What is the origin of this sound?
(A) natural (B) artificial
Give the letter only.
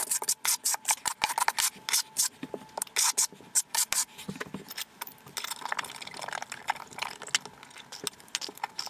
A